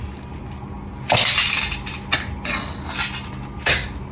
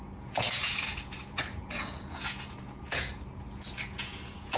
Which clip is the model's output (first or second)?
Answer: second